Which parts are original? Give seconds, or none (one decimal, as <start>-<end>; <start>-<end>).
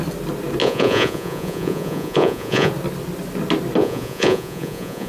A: 0.0-0.6; 2.7-3.8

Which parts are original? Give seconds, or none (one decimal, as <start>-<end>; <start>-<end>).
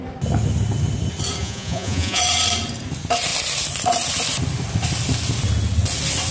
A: 0.0-1.4; 2.2-6.3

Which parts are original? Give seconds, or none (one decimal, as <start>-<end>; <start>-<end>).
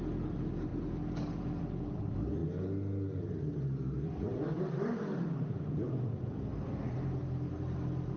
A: 0.0-8.2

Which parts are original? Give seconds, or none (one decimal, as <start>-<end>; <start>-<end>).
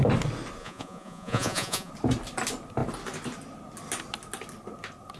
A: 0.0-0.6; 1.9-5.2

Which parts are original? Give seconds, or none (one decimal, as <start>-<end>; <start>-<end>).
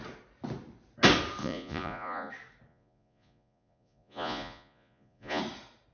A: 0.0-1.4; 2.3-2.7; 5.4-5.9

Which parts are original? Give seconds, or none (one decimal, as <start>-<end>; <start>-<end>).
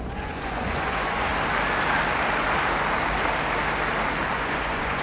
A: 1.3-4.3